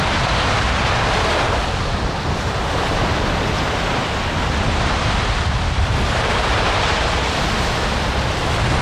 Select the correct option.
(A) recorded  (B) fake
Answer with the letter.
A